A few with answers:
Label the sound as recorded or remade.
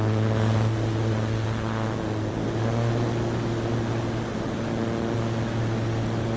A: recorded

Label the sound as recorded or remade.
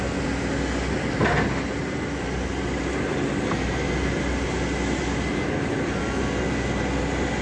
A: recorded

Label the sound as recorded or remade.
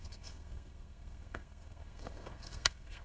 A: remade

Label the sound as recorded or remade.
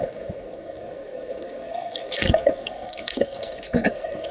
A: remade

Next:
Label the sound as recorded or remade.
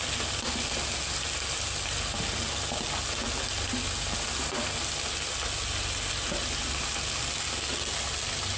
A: recorded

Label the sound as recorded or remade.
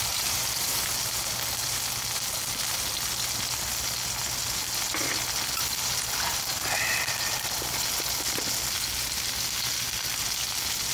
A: recorded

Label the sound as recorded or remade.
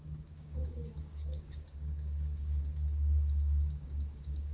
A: remade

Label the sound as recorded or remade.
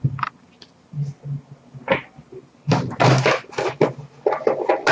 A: recorded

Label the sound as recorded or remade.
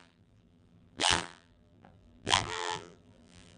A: remade